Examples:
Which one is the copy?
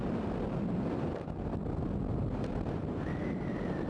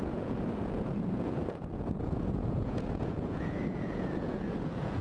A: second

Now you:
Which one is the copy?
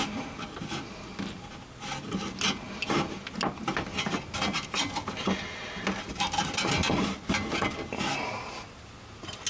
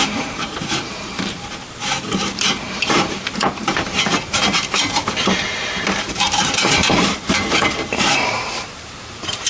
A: second